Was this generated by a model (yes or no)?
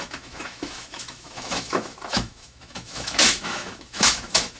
yes